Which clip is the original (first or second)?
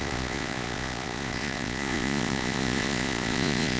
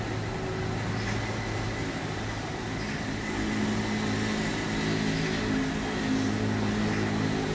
second